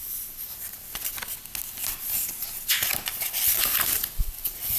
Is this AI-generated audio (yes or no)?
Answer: no